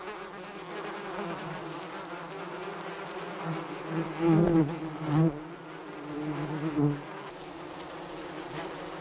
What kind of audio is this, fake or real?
real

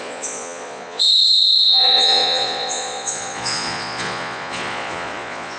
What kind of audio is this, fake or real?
fake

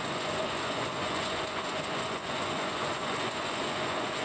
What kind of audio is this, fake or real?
fake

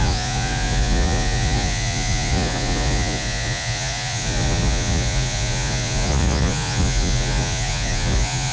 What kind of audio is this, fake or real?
fake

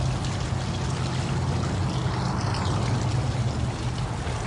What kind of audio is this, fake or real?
real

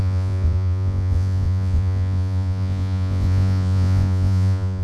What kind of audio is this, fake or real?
fake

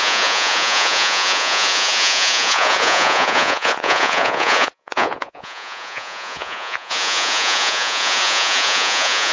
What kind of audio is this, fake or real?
fake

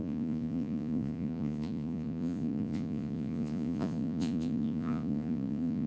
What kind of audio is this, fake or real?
fake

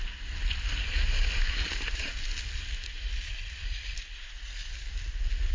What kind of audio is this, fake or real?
real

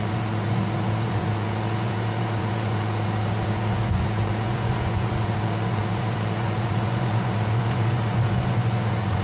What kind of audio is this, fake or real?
fake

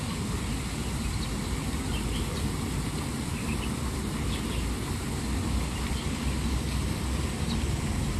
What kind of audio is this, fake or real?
real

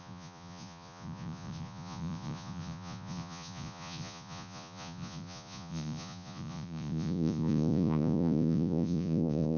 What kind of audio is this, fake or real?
fake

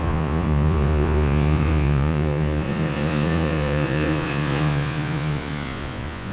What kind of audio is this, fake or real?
fake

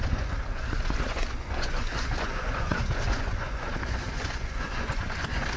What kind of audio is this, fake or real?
fake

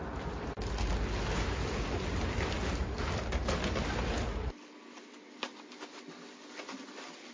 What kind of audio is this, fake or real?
real